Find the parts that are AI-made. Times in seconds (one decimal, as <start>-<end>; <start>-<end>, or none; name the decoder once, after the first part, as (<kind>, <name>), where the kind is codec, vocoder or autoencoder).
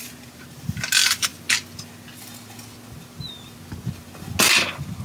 none